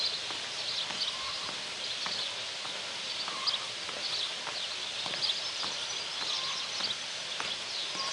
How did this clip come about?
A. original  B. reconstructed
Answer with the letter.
A